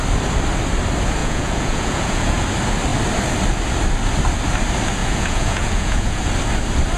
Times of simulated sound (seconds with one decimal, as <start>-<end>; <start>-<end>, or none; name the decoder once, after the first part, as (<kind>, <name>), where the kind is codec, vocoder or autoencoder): 1.2-2.4 (vocoder, Vocos); 5.0-6.2